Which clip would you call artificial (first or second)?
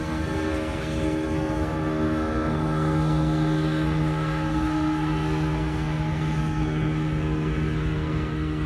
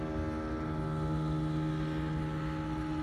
first